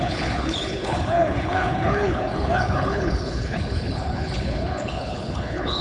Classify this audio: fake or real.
fake